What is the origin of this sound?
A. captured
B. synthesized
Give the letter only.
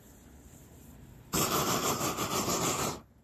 B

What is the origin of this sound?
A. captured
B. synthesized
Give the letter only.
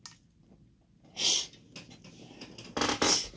A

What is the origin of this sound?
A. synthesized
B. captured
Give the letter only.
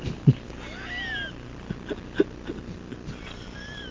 B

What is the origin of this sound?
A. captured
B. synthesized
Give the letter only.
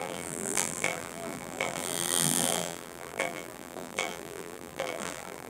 B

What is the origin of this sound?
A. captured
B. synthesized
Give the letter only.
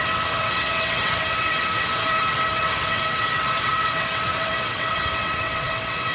B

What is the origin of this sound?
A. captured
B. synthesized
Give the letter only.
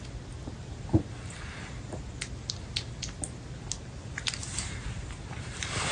A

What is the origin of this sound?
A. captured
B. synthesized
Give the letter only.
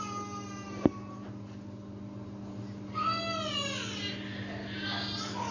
A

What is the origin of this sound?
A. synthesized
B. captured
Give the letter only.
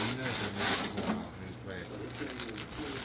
B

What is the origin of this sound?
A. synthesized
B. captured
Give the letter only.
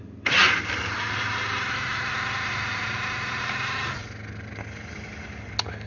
B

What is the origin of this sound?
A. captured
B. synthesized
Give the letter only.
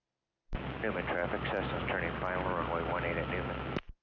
A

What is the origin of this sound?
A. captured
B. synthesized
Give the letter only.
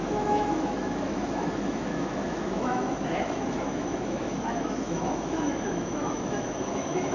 B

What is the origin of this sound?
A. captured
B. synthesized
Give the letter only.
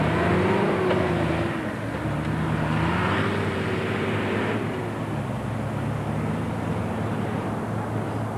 A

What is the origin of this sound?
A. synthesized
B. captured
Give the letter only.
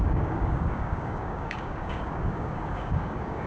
A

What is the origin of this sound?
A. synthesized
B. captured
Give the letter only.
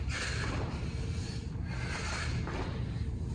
A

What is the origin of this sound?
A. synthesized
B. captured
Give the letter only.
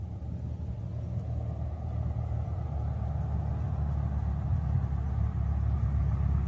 B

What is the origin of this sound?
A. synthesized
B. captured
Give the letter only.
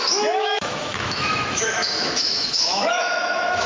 A